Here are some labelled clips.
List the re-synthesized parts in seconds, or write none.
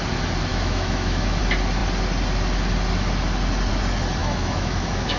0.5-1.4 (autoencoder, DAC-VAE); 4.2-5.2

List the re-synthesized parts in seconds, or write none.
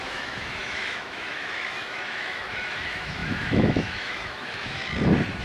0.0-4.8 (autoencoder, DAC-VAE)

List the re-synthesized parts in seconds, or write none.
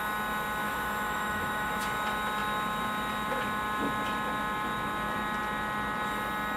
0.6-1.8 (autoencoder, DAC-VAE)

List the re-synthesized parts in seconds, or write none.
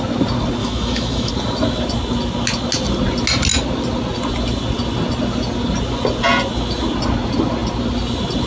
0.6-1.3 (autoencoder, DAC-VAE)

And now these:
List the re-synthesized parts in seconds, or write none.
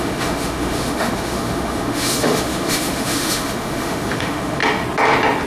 0.0-4.6 (autoencoder, DAC-VAE)